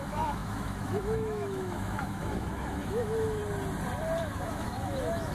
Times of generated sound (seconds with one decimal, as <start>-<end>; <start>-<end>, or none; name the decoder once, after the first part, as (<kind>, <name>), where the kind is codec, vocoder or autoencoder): 0.0-3.4 (autoencoder, DAC-VAE); 4.2-5.3